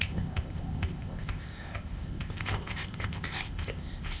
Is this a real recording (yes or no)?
no